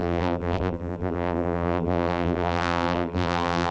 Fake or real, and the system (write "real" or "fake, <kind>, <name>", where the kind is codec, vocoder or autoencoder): fake, vocoder, BigVGAN v2